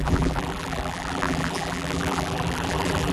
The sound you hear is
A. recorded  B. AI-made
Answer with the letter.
B